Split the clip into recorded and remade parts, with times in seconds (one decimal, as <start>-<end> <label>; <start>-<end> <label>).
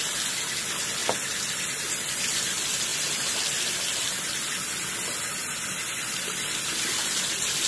0.0-7.7 recorded